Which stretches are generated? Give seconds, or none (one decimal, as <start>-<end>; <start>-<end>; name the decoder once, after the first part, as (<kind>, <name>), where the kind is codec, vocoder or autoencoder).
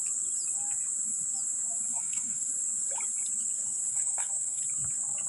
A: 1.9-2.5 (codec, SNAC); 3.9-4.6